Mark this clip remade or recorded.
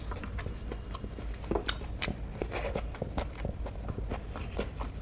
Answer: recorded